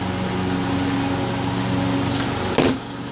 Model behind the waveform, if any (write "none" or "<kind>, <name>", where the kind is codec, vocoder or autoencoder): none